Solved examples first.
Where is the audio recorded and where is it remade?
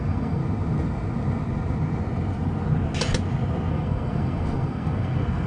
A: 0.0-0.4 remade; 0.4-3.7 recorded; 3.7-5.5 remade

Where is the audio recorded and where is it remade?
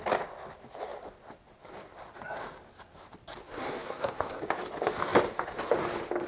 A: 0.0-3.4 recorded; 3.4-4.4 remade; 4.4-6.3 recorded